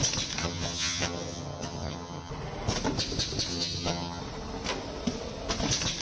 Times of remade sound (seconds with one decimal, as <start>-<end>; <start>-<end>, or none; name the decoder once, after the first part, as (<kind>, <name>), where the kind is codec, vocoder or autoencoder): 0.4-2.3 (vocoder, HiFi-GAN); 3.5-4.2